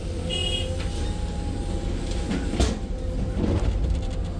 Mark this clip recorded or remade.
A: recorded